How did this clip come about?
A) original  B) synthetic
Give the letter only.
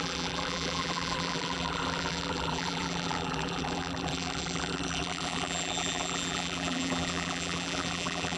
B